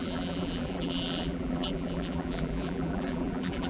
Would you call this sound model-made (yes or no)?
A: yes